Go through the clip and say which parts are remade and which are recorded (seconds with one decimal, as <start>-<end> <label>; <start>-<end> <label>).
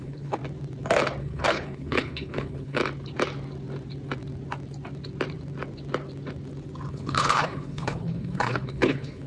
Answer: 0.0-0.4 remade; 0.4-1.2 recorded; 1.2-2.8 remade; 2.8-6.9 recorded; 6.9-9.3 remade